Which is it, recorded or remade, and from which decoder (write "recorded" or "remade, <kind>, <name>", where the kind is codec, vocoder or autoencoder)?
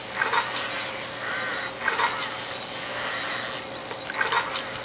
recorded